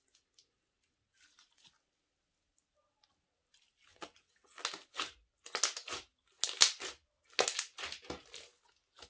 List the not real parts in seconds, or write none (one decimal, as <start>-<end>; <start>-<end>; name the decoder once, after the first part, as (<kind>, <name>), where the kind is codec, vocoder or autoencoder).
3.9-4.6 (vocoder, WaveNeXt)